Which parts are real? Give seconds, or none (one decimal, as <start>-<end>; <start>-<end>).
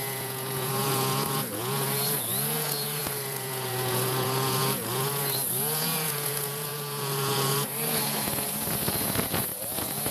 none